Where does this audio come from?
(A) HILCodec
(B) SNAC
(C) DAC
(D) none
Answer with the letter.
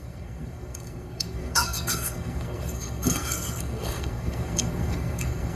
B